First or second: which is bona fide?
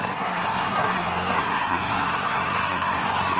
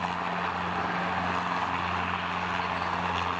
second